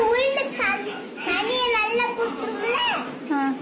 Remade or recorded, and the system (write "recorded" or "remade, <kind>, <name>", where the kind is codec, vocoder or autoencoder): recorded